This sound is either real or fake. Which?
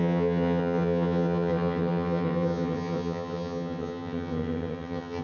fake